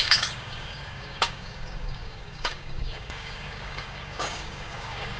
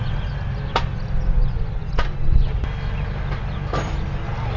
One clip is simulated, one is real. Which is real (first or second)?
second